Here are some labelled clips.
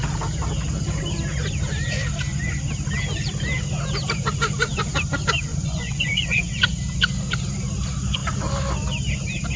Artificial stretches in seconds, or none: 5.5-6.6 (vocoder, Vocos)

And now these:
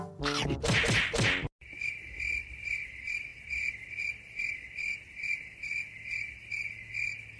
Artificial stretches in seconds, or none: none

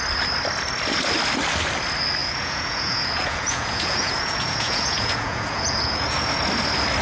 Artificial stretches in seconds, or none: 2.2-6.4 (vocoder, Vocos)

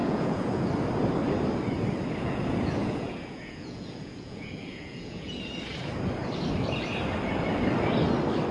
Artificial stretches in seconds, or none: 0.0-0.7 (vocoder, Vocos); 2.2-5.4